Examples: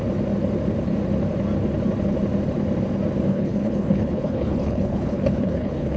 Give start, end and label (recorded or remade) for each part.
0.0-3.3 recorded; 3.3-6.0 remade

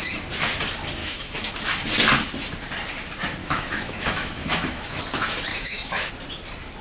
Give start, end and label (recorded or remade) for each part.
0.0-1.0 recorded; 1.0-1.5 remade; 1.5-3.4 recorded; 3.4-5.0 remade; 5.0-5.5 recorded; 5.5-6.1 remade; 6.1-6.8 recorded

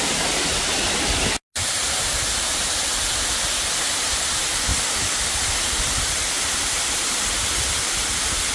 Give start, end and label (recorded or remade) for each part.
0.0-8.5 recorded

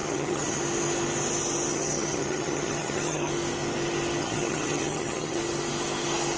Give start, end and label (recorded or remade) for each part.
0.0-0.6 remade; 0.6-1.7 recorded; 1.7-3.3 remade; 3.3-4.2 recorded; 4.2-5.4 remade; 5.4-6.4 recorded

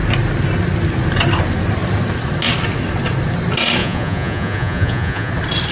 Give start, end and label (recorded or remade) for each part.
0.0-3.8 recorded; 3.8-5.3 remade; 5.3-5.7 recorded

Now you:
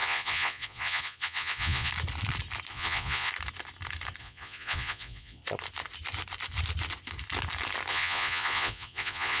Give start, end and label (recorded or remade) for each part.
0.0-1.9 remade; 1.9-2.7 recorded; 2.7-3.3 remade; 3.3-4.2 recorded; 4.2-5.4 remade; 5.4-7.9 recorded; 7.9-9.4 remade

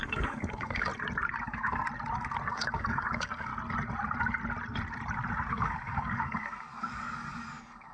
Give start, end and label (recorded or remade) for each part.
0.0-0.9 remade; 0.9-1.4 recorded; 1.4-1.8 remade; 1.8-2.5 recorded; 2.5-3.5 remade; 3.5-5.5 recorded; 5.5-7.9 remade